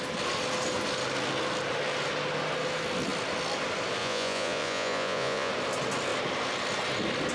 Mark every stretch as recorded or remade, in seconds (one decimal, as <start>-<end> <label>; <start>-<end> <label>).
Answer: 0.0-4.0 recorded; 4.0-5.5 remade; 5.5-7.3 recorded